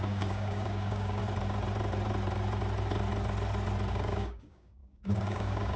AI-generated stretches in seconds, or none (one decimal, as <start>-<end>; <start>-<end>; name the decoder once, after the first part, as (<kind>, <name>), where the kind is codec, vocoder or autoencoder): 0.0-1.2 (codec, DAC); 3.9-5.8